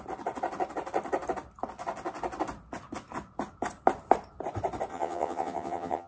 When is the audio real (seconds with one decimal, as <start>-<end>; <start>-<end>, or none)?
0.0-4.9